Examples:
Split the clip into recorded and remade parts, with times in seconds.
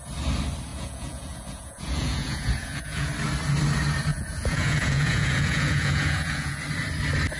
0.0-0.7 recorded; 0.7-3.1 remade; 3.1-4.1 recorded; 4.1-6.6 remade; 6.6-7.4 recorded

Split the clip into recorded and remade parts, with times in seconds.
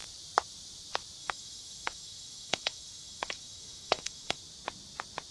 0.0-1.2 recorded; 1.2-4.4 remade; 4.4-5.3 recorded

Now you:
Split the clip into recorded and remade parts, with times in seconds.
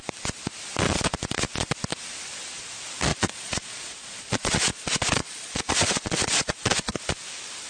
0.0-3.1 recorded; 3.1-7.0 remade; 7.0-7.7 recorded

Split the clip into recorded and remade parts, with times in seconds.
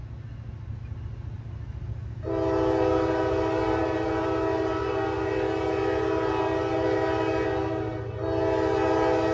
0.0-9.3 recorded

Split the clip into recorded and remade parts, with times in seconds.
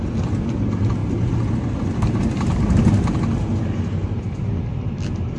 0.0-5.4 recorded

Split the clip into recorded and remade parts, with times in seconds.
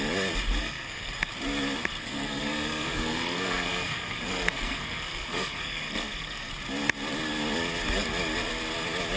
0.0-0.6 recorded; 0.6-1.1 remade; 1.1-2.0 recorded; 2.0-6.5 remade; 6.5-9.2 recorded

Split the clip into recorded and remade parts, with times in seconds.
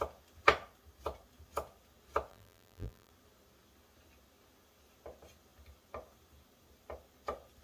0.0-2.3 recorded; 2.3-3.1 remade; 3.1-7.6 recorded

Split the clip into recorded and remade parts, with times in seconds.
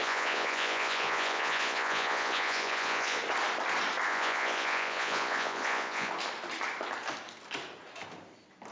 0.0-3.2 remade; 3.2-4.1 recorded; 4.1-6.1 remade; 6.1-8.7 recorded